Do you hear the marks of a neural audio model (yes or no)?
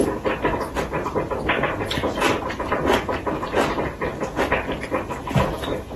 no